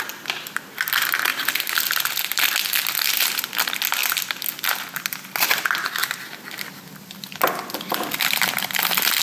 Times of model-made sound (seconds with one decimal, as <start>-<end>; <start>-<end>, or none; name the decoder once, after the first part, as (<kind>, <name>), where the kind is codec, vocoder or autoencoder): none